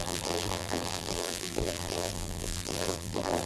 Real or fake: fake